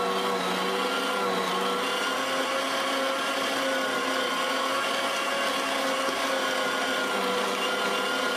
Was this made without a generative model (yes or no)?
yes